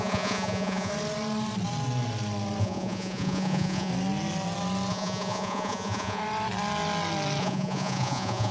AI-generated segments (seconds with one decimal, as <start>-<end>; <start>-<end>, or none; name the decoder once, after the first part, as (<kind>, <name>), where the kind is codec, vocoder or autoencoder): 0.0-0.9 (vocoder, Vocos); 2.6-3.9; 4.9-6.2; 7.4-8.5